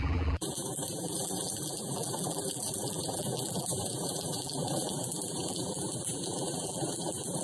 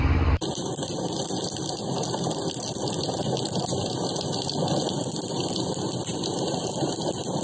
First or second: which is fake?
first